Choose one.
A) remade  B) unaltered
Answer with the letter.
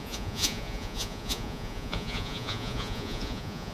A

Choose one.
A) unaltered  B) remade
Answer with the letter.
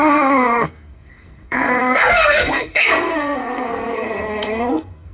B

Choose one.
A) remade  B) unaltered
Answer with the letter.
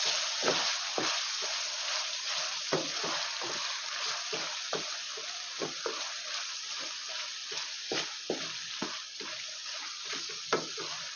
B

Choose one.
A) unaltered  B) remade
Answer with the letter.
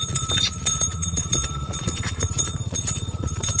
B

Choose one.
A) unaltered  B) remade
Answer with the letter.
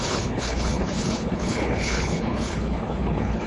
B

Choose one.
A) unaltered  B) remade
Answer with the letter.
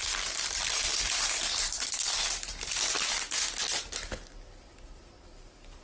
A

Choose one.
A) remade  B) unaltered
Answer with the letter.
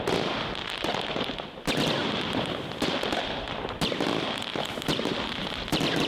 B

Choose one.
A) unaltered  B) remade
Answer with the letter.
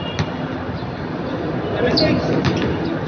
A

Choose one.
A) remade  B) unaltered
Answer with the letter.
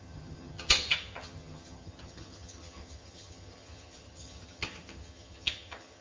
A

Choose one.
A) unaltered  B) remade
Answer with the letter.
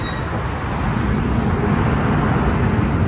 A